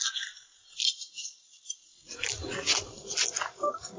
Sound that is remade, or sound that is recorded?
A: recorded